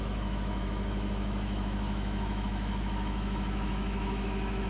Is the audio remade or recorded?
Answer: remade